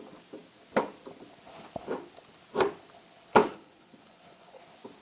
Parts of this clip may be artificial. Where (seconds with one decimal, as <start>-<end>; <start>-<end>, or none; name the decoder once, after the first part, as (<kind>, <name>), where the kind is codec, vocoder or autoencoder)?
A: 3.4-4.6 (vocoder, Vocos)